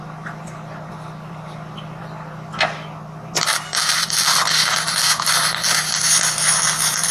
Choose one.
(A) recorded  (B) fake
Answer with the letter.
A